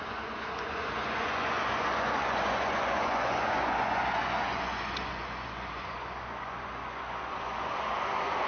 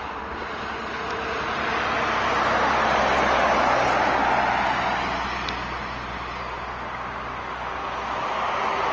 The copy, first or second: first